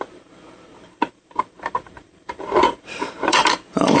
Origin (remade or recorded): remade